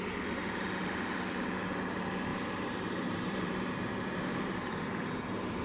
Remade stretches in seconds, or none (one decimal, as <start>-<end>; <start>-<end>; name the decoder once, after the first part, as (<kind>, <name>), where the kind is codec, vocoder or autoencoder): 2.3-3.5 (vocoder, BigVGAN v2); 3.9-4.6